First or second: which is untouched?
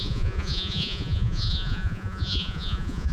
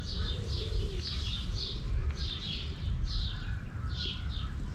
second